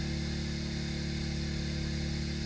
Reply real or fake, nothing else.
real